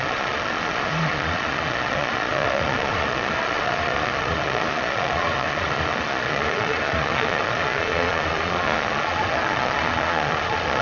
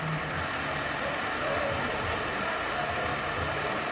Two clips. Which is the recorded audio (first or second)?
second